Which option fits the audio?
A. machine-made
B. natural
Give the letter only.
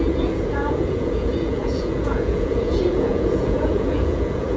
A